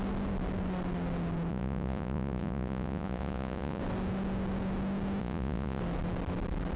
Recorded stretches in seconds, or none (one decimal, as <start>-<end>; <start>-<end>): 0.0-1.5; 3.8-5.2; 5.8-6.8